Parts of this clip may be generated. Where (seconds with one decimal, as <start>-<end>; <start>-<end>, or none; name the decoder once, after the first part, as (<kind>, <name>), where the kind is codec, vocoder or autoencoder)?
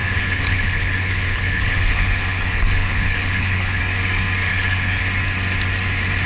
0.0-3.8 (codec, HILCodec); 4.5-5.0